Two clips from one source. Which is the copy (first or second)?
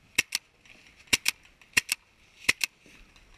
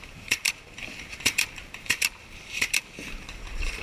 second